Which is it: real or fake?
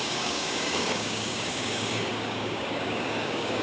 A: fake